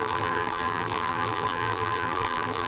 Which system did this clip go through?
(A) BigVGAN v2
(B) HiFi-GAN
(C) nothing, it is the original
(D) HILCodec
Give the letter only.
A